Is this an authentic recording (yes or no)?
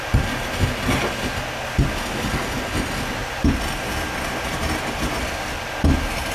yes